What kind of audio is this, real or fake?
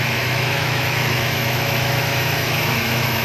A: fake